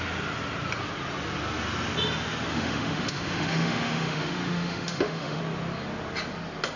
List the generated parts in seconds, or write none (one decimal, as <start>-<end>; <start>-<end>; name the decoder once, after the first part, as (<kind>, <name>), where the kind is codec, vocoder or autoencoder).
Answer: 2.5-5.4 (autoencoder, DAC-VAE)